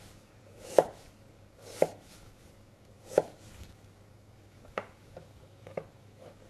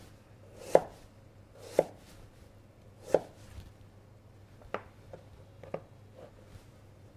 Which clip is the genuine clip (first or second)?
second